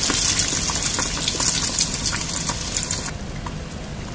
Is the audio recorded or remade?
recorded